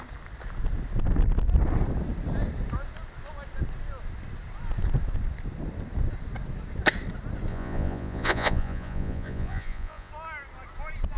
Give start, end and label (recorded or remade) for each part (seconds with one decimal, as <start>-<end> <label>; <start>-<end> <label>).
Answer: 0.0-7.5 recorded; 7.5-10.1 remade; 10.1-11.2 recorded